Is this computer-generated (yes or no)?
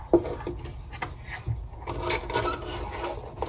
no